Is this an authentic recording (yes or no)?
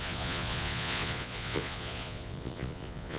no